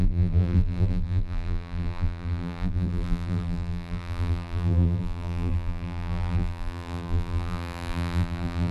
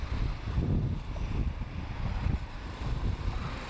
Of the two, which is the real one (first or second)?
second